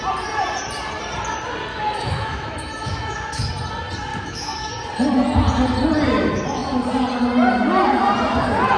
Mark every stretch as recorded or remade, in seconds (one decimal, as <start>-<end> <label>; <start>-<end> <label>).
0.0-1.7 recorded; 1.7-3.5 remade; 3.5-4.1 recorded; 4.1-4.7 remade; 4.7-8.8 recorded